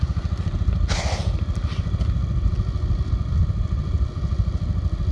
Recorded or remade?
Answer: recorded